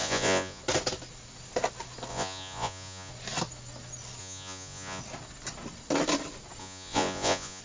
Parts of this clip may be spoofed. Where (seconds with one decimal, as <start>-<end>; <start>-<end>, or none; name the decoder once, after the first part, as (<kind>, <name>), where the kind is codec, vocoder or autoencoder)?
0.0-0.6 (vocoder, Vocos); 2.1-3.1; 4.2-5.0; 6.6-7.6